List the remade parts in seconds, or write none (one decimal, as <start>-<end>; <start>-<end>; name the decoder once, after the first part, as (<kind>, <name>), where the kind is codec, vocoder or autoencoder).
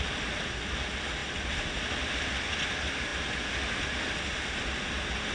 none